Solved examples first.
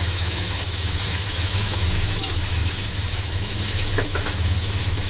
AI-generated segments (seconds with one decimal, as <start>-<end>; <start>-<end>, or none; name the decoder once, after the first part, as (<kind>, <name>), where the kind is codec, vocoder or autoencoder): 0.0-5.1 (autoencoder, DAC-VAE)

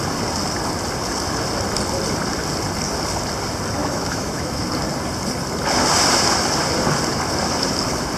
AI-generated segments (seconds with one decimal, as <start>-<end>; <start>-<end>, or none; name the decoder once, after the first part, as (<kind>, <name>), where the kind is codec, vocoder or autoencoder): 3.8-4.6 (autoencoder, DAC-VAE)

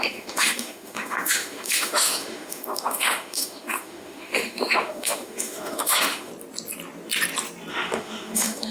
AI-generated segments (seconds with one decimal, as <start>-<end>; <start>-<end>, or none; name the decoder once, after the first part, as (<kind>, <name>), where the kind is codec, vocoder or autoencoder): 0.0-6.3 (autoencoder, DAC-VAE); 7.7-8.7

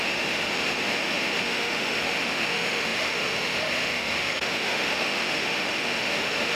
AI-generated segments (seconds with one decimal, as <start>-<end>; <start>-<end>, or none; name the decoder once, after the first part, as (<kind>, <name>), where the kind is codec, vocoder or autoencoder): 0.0-6.6 (autoencoder, DAC-VAE)